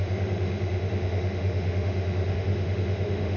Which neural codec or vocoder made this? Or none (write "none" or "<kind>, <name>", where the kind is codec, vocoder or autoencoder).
autoencoder, DAC-VAE